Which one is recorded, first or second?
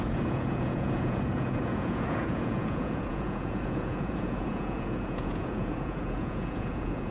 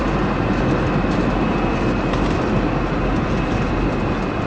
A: second